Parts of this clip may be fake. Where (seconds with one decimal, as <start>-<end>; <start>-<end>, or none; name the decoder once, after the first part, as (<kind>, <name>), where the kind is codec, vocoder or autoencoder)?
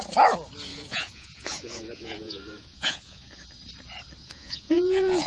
0.7-3.4 (vocoder, Vocos); 4.2-5.3